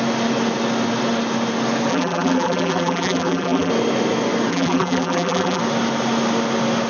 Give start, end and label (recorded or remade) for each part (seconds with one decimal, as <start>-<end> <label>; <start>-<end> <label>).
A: 0.0-1.9 recorded; 1.9-3.7 remade; 3.7-4.5 recorded; 4.5-5.6 remade; 5.6-6.9 recorded